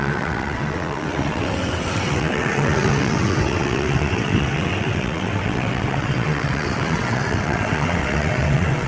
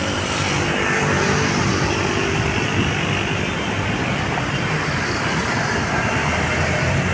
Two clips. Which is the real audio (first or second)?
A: second